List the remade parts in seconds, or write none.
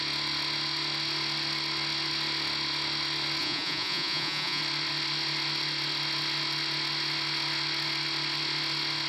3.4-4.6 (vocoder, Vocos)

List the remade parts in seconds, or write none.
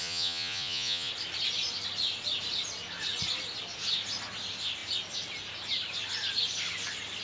0.0-1.1 (vocoder, Vocos)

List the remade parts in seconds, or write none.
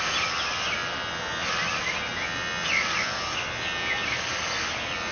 none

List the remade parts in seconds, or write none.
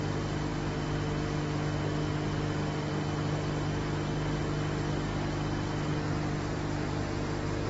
none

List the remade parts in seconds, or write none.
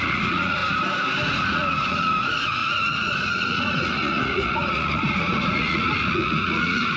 0.0-0.6 (vocoder, Vocos); 1.3-7.0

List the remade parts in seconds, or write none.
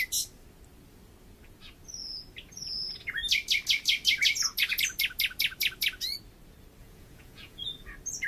6.8-7.9 (vocoder, Vocos)